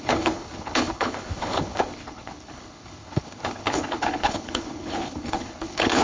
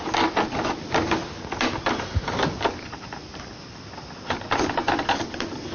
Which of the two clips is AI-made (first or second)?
first